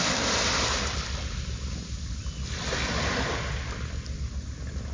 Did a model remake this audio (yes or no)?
no